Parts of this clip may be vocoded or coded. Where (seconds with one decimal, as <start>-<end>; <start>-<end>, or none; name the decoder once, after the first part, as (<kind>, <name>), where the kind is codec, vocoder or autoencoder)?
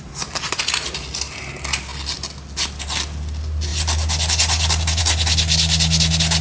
none